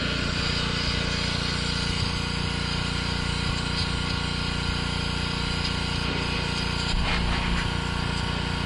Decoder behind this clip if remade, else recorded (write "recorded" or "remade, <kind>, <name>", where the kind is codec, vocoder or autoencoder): recorded